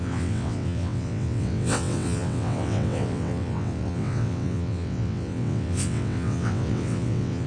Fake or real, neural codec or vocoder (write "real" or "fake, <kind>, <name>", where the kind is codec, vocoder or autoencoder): fake, vocoder, WaveNeXt